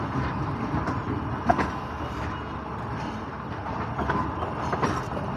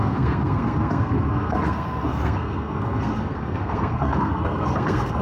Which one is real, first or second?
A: first